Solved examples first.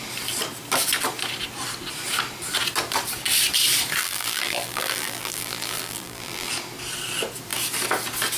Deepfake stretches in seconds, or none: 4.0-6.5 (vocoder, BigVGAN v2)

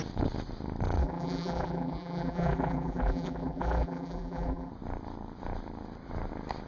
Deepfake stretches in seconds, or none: 1.0-4.7 (vocoder, BigVGAN v2)

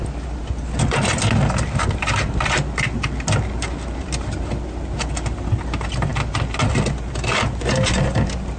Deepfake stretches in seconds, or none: none